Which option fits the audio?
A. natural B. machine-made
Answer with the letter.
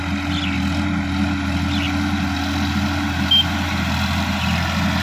A